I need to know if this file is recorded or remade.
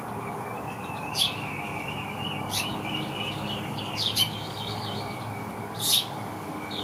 remade